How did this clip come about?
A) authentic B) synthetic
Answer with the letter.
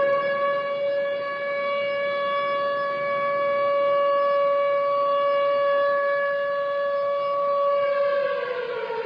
A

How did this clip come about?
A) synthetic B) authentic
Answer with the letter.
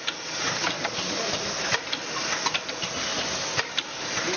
B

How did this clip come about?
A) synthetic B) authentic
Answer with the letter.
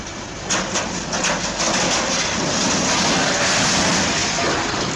B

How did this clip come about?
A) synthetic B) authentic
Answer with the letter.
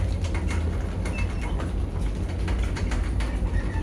B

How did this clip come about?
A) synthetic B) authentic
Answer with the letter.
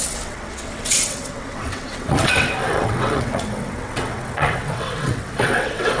A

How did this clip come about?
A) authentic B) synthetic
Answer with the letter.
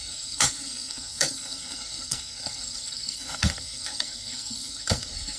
B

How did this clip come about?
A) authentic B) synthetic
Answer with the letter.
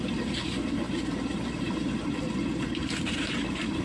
B